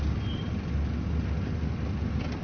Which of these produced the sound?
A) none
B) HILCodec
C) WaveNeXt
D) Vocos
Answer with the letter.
A